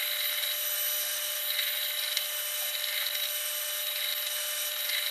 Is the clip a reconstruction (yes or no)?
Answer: no